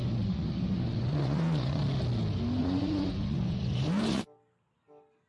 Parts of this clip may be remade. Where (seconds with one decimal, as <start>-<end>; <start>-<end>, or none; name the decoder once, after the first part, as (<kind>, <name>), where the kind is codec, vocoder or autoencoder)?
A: 0.0-1.8 (vocoder, Vocos); 2.6-4.2